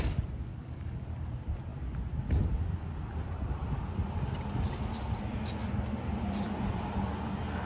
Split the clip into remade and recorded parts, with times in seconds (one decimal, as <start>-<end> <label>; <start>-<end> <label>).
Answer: 0.0-0.5 recorded; 0.5-1.0 remade; 1.0-7.7 recorded